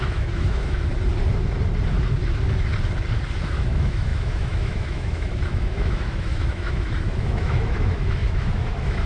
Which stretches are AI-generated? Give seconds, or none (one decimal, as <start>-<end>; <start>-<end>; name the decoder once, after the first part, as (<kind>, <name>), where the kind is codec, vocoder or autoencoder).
0.0-0.9 (autoencoder, DAC-VAE); 3.4-9.1